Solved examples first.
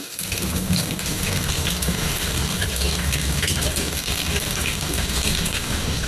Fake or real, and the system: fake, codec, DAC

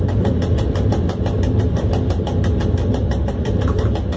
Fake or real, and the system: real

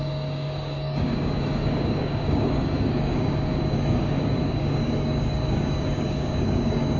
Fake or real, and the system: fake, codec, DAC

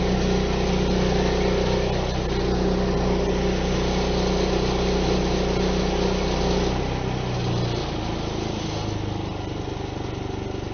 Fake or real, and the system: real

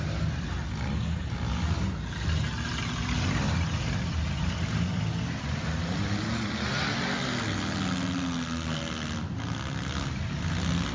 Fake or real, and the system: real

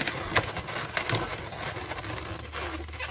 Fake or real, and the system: real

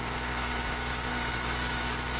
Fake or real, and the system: fake, codec, DAC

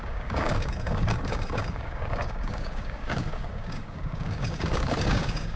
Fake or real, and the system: fake, codec, DAC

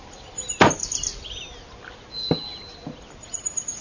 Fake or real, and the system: real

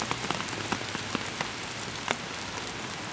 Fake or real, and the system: real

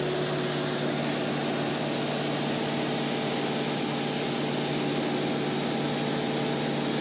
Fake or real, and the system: real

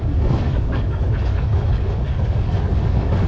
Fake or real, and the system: fake, codec, DAC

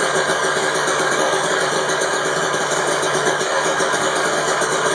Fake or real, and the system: fake, codec, DAC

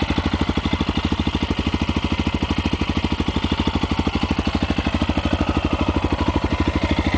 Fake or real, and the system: real